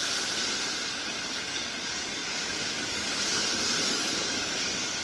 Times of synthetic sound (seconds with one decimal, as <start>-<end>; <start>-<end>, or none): 0.8-5.0